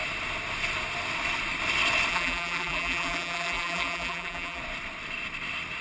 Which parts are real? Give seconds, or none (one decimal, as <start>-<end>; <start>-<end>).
0.0-2.1; 4.6-5.8